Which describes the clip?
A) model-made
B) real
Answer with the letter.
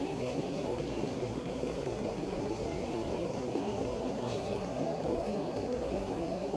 A